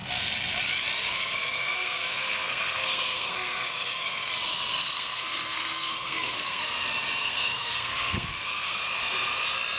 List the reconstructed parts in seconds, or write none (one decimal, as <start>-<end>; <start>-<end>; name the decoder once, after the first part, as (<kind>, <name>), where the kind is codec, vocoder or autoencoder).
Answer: 1.0-4.3 (codec, SNAC); 4.7-6.7; 7.2-8.8